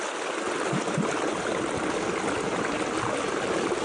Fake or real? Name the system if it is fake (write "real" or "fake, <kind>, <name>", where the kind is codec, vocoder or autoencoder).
real